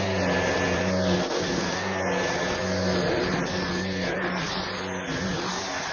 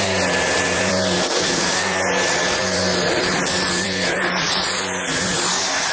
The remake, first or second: second